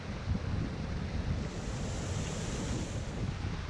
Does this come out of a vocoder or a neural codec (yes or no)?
no